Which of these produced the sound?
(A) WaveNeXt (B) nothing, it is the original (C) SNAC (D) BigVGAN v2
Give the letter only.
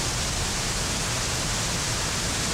B